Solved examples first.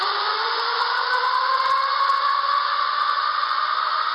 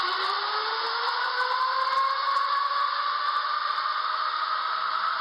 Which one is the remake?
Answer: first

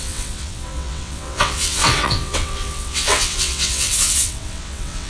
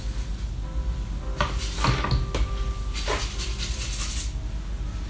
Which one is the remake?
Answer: first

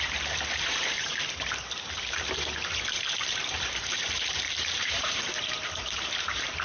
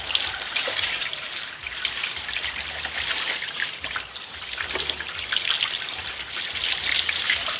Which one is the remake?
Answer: first